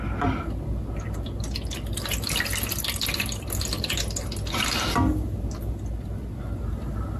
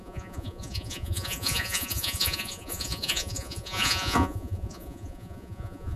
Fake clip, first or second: second